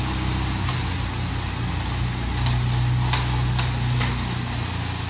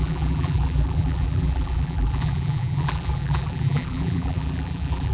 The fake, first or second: second